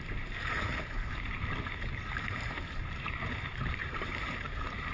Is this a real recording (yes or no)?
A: no